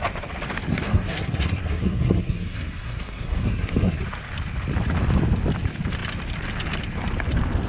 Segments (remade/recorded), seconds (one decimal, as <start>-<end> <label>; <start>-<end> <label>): 0.0-0.7 recorded; 0.7-4.0 remade; 4.0-7.7 recorded

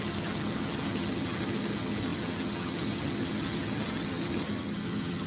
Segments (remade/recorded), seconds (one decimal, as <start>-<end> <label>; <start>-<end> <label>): 0.0-5.3 remade

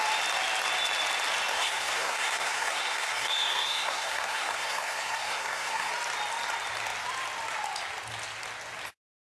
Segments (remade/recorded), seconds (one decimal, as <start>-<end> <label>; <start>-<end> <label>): 0.0-1.5 recorded; 1.5-5.9 remade; 5.9-9.4 recorded